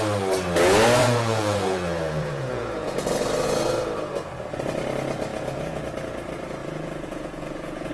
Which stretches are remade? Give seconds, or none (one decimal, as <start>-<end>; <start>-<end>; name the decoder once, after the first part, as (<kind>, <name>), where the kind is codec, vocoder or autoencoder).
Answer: 1.0-3.1 (vocoder, Vocos); 5.3-5.8; 6.6-7.9